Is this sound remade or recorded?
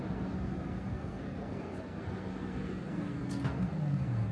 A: remade